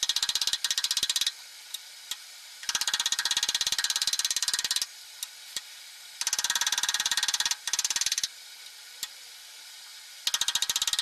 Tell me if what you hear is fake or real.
real